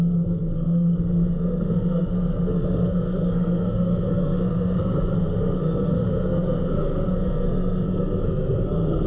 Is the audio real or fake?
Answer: fake